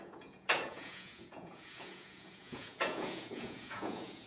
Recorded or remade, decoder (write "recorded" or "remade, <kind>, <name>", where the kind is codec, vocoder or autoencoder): remade, vocoder, Vocos